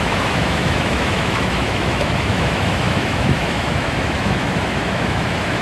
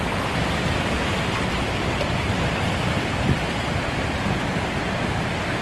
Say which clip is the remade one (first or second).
first